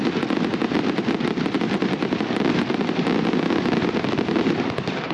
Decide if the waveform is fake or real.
real